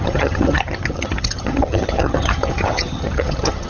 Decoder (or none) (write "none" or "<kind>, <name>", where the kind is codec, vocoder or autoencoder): vocoder, HiFi-GAN